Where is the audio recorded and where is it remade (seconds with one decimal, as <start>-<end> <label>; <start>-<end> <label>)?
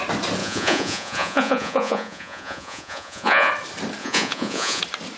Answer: 0.0-0.4 recorded; 0.4-3.5 remade; 3.5-4.0 recorded; 4.0-4.8 remade; 4.8-5.2 recorded